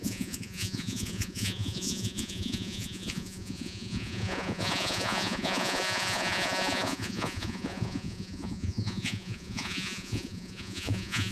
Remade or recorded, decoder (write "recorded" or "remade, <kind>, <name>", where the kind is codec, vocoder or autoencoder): remade, vocoder, Vocos